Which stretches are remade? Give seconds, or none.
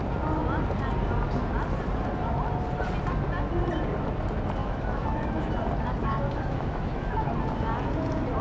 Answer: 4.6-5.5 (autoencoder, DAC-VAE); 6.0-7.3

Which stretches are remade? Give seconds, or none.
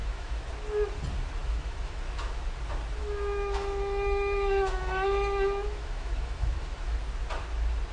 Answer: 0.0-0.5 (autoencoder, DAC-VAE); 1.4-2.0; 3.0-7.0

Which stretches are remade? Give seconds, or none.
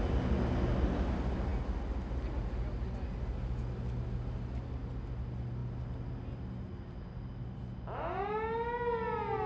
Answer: none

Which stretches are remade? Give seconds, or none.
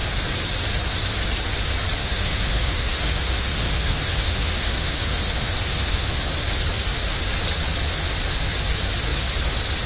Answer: 2.0-6.1 (autoencoder, DAC-VAE)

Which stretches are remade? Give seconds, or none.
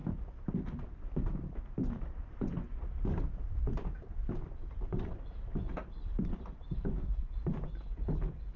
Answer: none